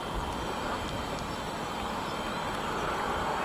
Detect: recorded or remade recorded